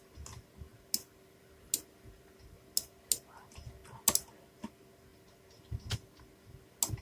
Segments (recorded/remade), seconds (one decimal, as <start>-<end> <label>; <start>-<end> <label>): 0.0-7.0 recorded